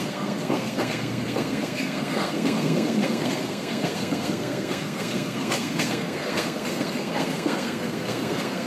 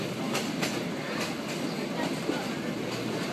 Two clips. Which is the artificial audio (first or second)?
first